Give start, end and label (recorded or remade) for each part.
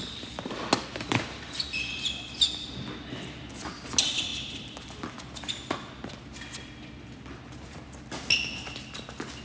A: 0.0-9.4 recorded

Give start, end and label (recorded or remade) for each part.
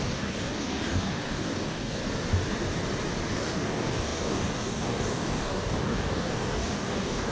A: 0.0-2.0 remade; 2.0-3.3 recorded; 3.3-7.3 remade